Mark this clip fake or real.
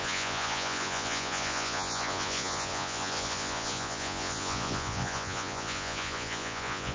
fake